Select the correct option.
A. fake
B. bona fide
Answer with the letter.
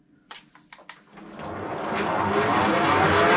B